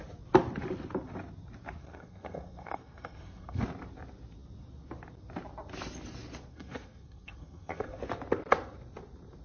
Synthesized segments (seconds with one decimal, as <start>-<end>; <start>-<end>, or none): 1.8-3.6; 6.5-8.0